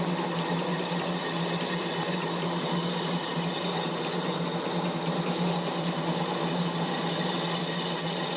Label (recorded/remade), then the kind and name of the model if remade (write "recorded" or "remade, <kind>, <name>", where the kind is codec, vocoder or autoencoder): recorded